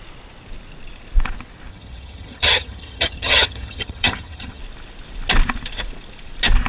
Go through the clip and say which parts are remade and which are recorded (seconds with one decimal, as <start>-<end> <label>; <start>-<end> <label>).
0.0-1.7 recorded; 1.7-4.6 remade; 4.6-6.7 recorded